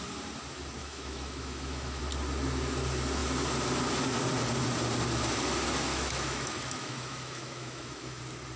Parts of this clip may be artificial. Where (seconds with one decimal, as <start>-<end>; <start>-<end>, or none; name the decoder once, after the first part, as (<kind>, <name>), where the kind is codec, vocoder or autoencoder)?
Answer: 0.8-2.0 (autoencoder, DAC-VAE); 5.9-8.2